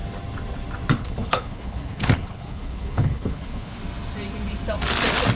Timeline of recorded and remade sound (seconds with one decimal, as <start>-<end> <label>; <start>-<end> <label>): 0.0-1.0 recorded; 1.0-3.8 remade; 3.8-5.4 recorded